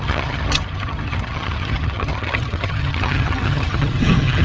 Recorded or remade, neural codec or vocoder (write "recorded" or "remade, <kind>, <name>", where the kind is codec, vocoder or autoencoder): remade, vocoder, HiFi-GAN